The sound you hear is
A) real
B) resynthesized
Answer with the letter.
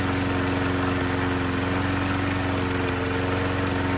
A